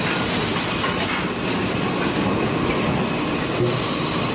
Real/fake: real